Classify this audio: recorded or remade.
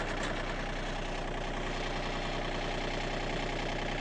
recorded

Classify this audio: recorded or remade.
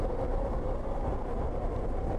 recorded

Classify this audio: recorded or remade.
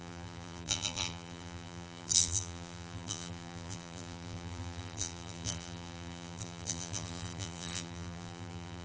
remade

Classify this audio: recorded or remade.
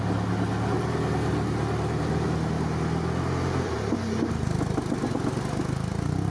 recorded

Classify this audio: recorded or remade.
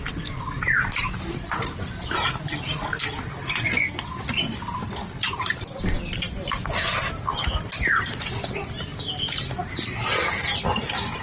recorded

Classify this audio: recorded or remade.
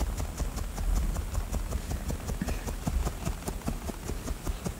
recorded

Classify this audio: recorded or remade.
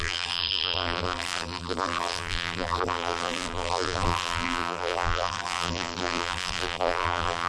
remade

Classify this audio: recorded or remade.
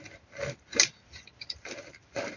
remade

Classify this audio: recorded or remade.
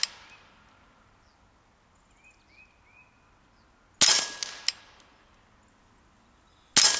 recorded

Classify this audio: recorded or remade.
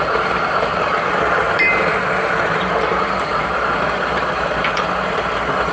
remade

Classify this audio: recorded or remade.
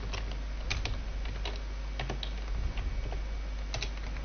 recorded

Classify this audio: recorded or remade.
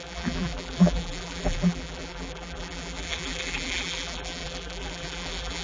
remade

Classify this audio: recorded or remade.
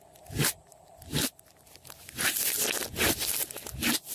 recorded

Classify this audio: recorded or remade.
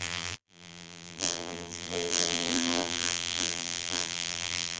remade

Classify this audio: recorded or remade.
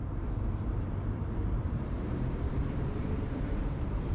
remade